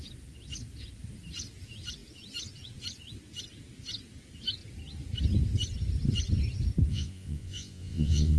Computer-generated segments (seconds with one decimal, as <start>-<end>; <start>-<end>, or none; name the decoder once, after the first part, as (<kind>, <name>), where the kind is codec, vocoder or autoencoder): 6.9-8.4 (vocoder, Vocos)